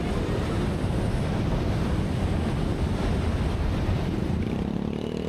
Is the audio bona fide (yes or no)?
no